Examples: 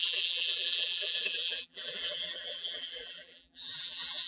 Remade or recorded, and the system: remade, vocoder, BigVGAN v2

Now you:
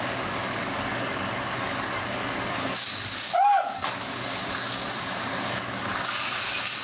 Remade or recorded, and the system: remade, codec, DAC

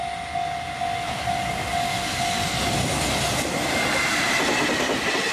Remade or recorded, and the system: recorded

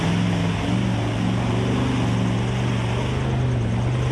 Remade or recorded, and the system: recorded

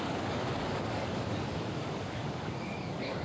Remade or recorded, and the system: remade, codec, DAC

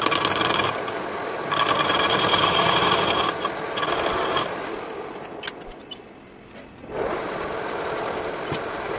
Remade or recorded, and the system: recorded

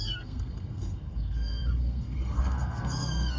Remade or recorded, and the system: remade, codec, SNAC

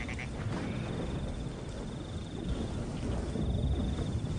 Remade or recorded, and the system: recorded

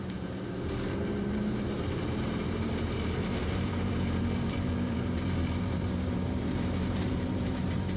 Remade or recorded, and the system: remade, vocoder, BigVGAN v2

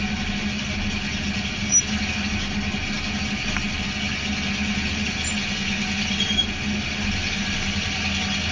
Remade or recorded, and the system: recorded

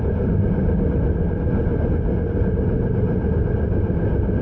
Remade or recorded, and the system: recorded